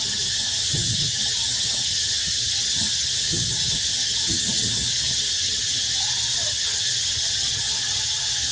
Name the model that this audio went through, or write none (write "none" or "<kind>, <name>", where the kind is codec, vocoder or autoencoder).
vocoder, HiFi-GAN